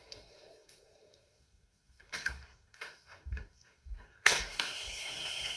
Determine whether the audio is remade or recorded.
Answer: remade